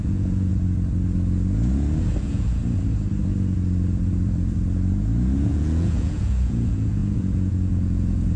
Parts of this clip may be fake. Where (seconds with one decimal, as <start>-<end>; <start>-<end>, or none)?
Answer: 0.0-0.5; 2.2-2.6; 5.5-8.4